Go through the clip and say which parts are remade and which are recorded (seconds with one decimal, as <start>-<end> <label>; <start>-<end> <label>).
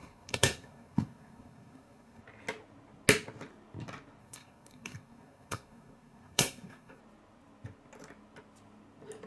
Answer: 0.0-2.2 remade; 2.2-4.2 recorded; 4.2-7.0 remade; 7.0-9.3 recorded